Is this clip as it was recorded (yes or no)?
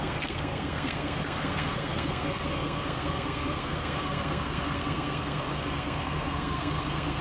no